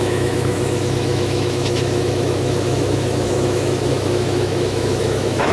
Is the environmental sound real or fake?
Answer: fake